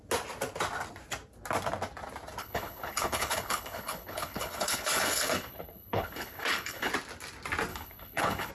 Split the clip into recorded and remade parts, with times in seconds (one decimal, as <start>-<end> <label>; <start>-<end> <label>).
0.0-2.4 recorded; 2.4-6.9 remade; 6.9-7.7 recorded; 7.7-8.5 remade